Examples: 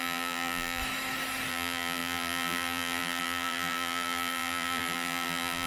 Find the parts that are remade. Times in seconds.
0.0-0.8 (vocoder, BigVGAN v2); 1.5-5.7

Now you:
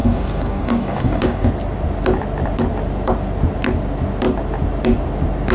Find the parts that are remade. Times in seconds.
0.0-1.5 (codec, DAC)

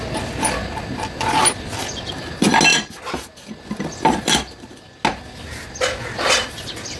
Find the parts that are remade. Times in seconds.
none

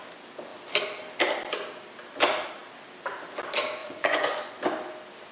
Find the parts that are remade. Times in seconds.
3.8-4.6 (vocoder, Vocos)

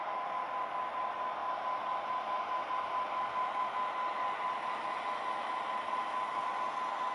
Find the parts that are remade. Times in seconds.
none

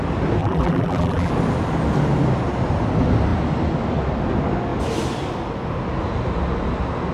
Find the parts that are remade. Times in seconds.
0.4-1.3 (vocoder, BigVGAN v2)

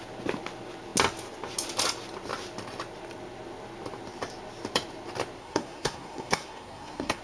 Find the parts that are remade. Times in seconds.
5.4-7.2 (codec, SNAC)

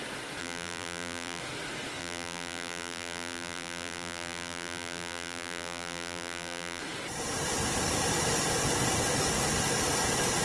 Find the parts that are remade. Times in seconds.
0.4-1.4 (vocoder, BigVGAN v2); 2.0-6.8